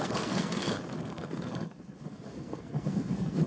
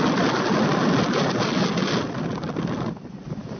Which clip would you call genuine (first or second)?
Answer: second